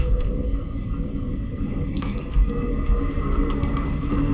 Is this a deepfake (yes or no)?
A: yes